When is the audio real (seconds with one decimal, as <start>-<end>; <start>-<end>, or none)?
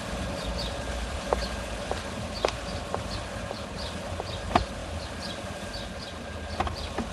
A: 0.0-7.1